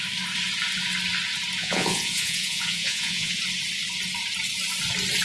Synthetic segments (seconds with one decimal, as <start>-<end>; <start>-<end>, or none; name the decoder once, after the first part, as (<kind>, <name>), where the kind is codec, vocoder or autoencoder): 1.6-3.4 (vocoder, Vocos)